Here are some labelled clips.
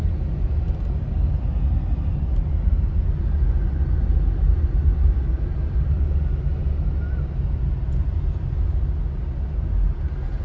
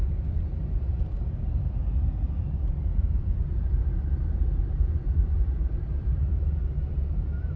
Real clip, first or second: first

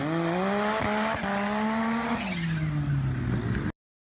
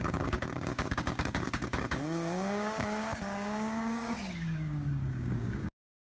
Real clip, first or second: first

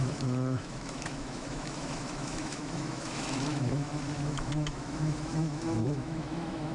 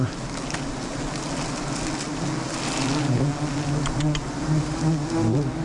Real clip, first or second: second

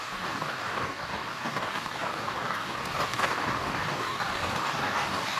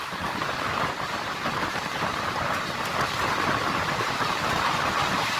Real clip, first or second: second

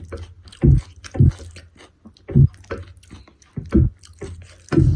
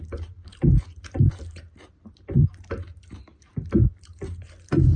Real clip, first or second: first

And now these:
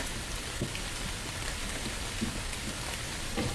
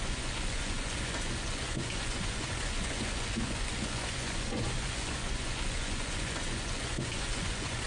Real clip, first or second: first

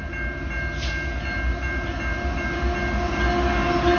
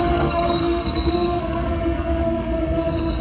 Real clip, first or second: first